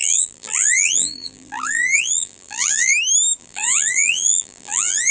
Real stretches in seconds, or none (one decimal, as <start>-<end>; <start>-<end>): 2.9-3.4